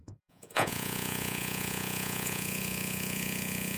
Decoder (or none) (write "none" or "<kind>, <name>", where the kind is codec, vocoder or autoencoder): vocoder, Vocos